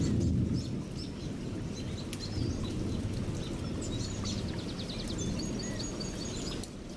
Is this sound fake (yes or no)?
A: no